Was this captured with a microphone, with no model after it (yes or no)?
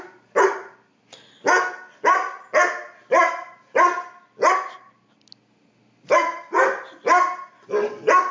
yes